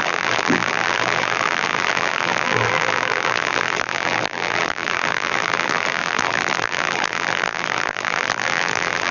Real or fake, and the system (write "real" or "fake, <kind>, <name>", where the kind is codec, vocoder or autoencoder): fake, vocoder, BigVGAN v2